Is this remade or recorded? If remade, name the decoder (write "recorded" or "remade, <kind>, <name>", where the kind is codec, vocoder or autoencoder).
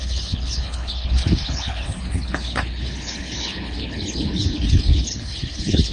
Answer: remade, codec, HILCodec